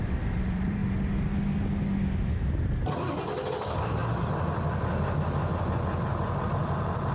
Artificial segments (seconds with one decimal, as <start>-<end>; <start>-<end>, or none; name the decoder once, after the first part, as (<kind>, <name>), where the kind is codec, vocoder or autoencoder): 0.0-0.8 (vocoder, BigVGAN v2); 3.5-4.0; 6.4-7.1